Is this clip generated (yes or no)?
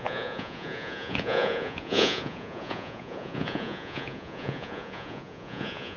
yes